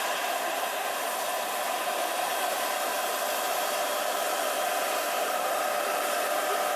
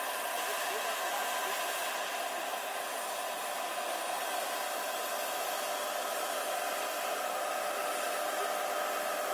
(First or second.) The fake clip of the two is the first